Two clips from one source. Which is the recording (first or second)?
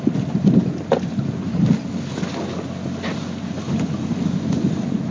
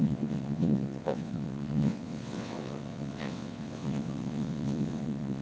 first